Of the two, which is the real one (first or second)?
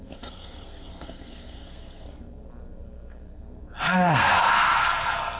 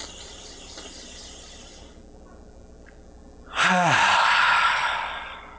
second